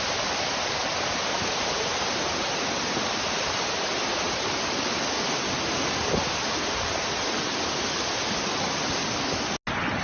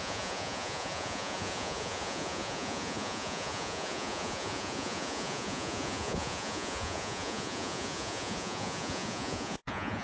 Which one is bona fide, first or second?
first